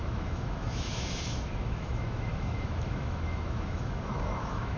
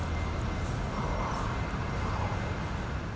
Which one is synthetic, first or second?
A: first